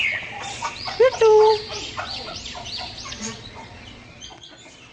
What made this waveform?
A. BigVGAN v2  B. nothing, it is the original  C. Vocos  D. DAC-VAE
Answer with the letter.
C